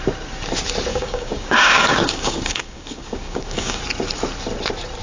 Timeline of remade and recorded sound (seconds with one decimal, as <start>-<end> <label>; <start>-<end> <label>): 0.0-0.9 recorded; 0.9-3.8 remade; 3.8-5.0 recorded

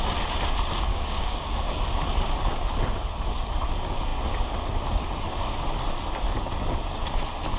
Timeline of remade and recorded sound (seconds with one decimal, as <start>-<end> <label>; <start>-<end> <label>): 0.0-0.9 recorded; 0.9-1.8 remade; 1.8-7.6 recorded

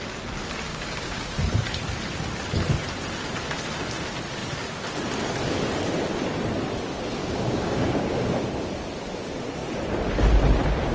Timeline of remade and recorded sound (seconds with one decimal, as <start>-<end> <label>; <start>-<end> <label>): 0.0-0.7 recorded; 0.7-1.3 remade; 1.3-7.2 recorded; 7.2-8.3 remade; 8.3-10.9 recorded

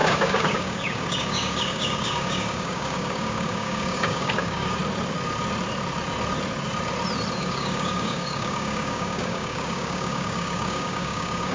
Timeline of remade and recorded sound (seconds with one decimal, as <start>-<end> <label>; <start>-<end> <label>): 0.0-4.8 remade; 4.8-7.4 recorded; 7.4-11.5 remade

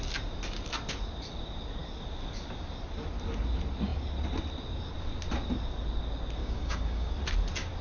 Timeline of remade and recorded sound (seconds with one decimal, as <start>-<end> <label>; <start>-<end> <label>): 0.0-6.4 recorded; 6.4-7.1 remade; 7.1-7.8 recorded